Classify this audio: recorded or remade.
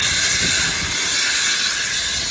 recorded